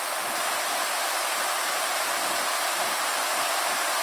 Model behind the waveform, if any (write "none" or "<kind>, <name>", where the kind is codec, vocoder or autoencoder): none